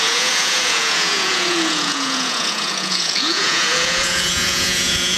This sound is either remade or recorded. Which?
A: remade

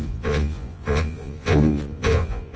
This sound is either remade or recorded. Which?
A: remade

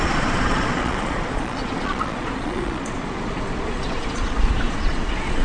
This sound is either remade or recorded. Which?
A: remade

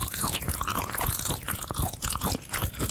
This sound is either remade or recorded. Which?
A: remade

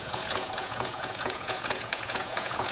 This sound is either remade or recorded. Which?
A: remade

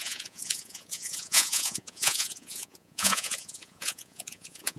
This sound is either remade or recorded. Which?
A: remade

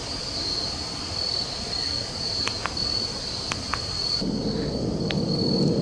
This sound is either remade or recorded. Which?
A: recorded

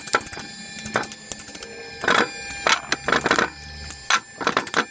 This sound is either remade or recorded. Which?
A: recorded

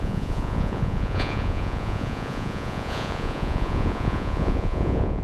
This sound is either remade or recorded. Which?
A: remade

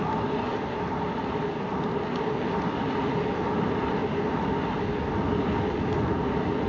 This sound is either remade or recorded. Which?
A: recorded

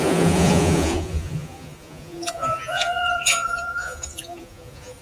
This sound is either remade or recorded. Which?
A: remade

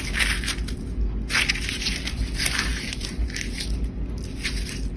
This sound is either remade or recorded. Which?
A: recorded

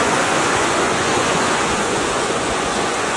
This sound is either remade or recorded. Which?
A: remade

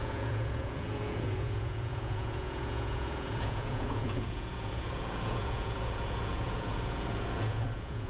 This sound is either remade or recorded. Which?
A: remade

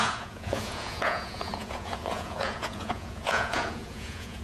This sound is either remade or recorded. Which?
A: remade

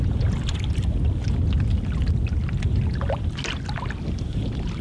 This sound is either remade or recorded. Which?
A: recorded